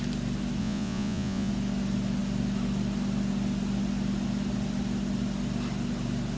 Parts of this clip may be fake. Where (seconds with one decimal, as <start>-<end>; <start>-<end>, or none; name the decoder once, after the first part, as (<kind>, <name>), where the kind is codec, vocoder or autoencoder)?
0.6-1.5 (vocoder, Vocos)

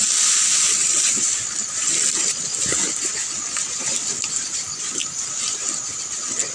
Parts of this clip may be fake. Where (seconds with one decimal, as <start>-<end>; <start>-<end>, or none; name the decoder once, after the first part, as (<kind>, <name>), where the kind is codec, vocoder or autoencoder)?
none

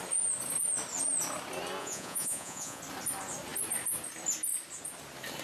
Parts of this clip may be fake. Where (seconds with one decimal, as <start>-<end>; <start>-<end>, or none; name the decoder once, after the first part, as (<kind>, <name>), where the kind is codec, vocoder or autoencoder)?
1.8-2.8 (vocoder, Vocos)

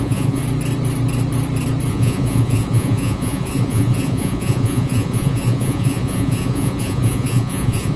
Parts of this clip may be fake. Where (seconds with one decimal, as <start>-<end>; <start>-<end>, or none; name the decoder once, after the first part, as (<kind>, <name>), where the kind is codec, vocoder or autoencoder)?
0.0-0.4 (vocoder, Vocos); 1.9-8.0

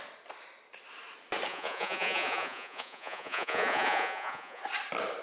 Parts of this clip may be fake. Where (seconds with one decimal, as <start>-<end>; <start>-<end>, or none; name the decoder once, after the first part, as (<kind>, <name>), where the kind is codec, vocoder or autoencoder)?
1.5-4.6 (vocoder, Vocos)